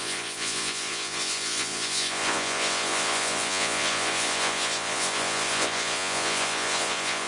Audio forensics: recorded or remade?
remade